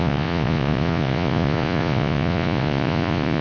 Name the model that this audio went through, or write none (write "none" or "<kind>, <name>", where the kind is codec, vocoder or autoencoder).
vocoder, Vocos